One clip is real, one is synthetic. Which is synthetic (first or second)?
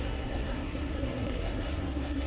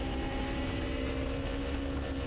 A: first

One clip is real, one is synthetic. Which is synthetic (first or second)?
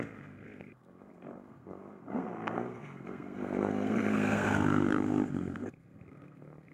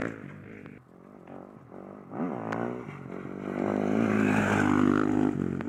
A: first